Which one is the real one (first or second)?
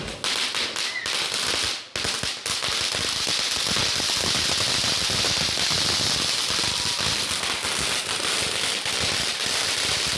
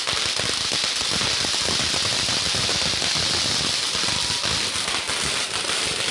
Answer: first